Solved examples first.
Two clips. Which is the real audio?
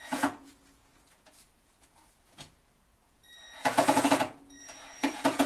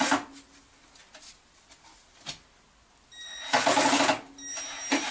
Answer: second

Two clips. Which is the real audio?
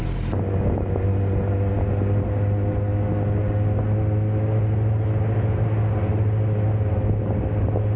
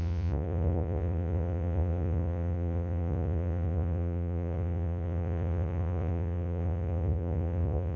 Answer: first